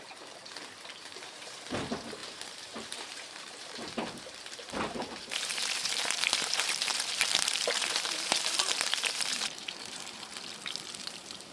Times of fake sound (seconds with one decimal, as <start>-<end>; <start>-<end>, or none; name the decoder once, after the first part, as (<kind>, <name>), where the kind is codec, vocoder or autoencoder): 0.0-10.3 (vocoder, BigVGAN v2); 10.9-11.5